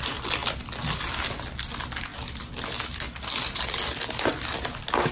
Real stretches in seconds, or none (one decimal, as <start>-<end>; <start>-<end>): 0.0-5.1